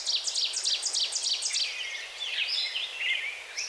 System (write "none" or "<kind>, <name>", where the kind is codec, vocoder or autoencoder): none